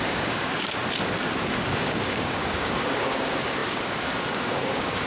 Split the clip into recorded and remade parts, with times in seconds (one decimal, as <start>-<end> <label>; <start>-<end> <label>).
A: 0.0-0.8 remade; 0.8-1.4 recorded; 1.4-5.1 remade